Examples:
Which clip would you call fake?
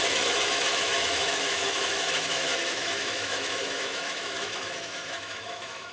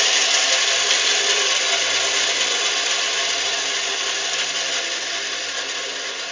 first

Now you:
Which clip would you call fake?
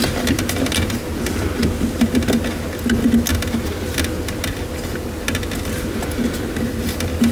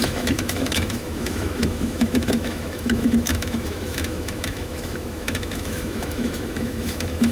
second